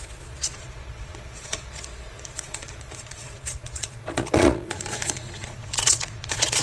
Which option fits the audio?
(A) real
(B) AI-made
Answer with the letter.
B